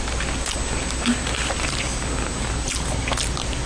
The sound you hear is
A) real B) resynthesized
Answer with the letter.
A